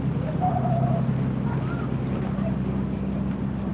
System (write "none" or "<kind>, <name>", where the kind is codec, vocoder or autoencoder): none